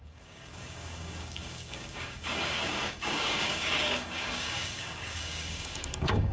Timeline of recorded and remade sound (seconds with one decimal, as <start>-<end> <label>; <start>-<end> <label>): 0.0-6.3 remade